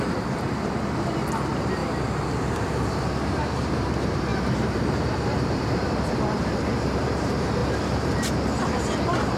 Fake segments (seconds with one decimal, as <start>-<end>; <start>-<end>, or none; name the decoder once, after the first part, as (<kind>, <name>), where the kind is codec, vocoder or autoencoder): 0.0-1.8 (vocoder, BigVGAN v2); 2.4-9.4